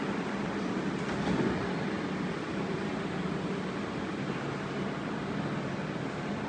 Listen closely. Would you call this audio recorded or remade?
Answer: recorded